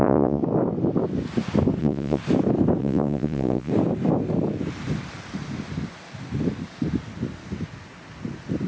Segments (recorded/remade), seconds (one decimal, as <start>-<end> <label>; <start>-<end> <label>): 0.0-0.4 remade; 0.4-1.8 recorded; 1.8-2.2 remade; 2.2-2.8 recorded; 2.8-3.7 remade; 3.7-8.7 recorded